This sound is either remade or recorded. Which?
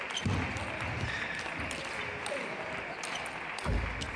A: recorded